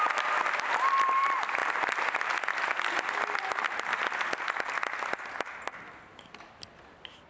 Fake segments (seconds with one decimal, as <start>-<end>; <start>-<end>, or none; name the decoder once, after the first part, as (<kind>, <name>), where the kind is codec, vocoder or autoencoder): none